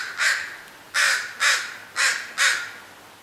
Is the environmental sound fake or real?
real